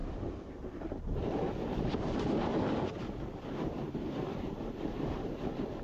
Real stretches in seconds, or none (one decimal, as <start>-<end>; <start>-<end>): 1.4-4.5